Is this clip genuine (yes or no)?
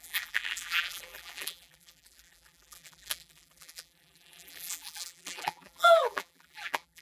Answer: no